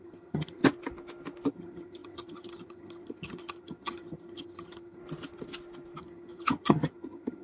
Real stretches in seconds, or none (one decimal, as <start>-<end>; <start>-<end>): 0.6-1.5; 5.0-6.0